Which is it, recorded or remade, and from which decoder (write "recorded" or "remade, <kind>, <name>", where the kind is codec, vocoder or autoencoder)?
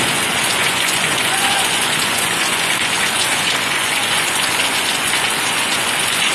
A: remade, vocoder, Vocos